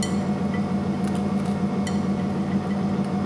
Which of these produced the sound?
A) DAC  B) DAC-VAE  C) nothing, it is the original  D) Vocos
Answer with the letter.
C